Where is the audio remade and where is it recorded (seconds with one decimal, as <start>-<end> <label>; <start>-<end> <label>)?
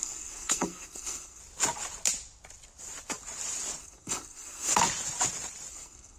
0.0-1.4 remade; 1.4-3.8 recorded; 3.8-4.7 remade; 4.7-5.7 recorded; 5.7-6.2 remade